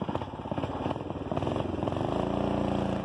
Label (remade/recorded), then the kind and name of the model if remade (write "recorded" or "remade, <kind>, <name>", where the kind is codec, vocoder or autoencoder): recorded